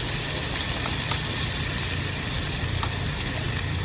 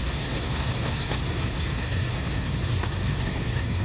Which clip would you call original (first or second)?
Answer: first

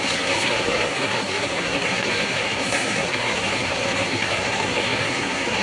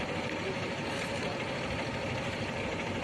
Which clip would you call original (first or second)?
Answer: second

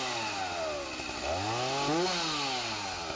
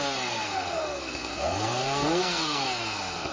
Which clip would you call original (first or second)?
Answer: first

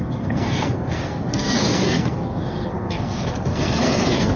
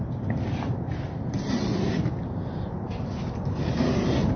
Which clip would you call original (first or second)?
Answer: second